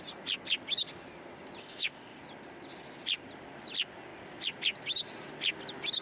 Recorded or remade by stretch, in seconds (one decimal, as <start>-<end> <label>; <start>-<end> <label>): 0.0-1.6 recorded; 1.6-2.2 remade; 2.2-6.0 recorded